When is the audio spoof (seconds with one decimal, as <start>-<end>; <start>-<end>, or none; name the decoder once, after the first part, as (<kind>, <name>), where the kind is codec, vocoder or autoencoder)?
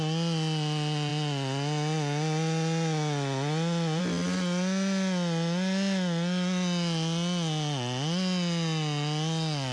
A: none